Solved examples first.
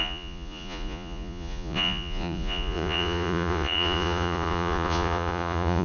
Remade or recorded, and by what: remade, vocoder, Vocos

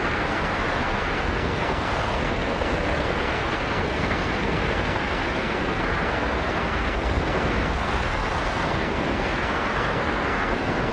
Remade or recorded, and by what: remade, codec, SNAC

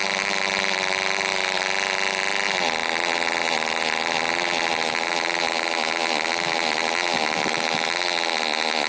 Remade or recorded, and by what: recorded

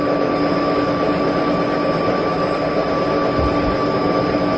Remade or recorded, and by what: recorded